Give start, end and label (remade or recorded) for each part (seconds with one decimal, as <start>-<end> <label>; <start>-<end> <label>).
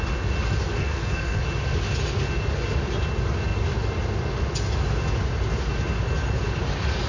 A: 0.0-0.7 recorded; 0.7-1.4 remade; 1.4-7.1 recorded